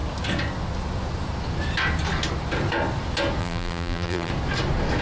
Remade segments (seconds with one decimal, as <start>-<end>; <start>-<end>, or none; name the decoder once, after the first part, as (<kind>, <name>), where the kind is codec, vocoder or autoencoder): 3.4-4.3 (vocoder, BigVGAN v2)